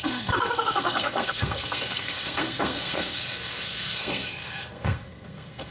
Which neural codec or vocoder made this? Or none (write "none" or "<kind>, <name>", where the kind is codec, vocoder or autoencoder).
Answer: codec, SNAC